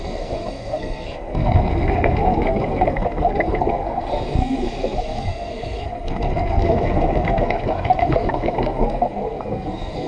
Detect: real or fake fake